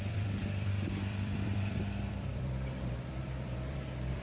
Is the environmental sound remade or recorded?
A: remade